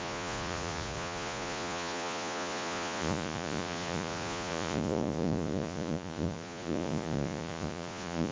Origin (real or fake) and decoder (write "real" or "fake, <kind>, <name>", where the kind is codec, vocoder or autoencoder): fake, vocoder, Vocos